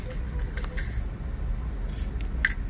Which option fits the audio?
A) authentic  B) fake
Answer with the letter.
A